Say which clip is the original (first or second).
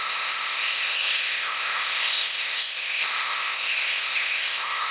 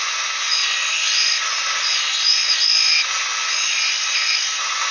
second